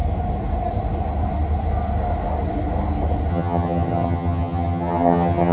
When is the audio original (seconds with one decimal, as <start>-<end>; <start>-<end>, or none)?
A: 0.0-3.3